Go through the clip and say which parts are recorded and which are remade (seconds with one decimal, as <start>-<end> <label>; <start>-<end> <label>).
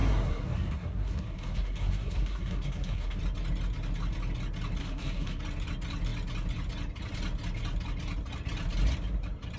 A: 0.0-3.2 remade; 3.2-4.8 recorded; 4.8-5.4 remade; 5.4-9.6 recorded